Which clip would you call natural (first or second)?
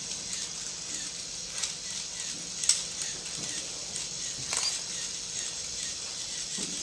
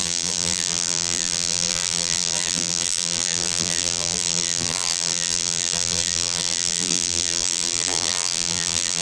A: first